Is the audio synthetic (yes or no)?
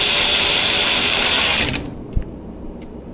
yes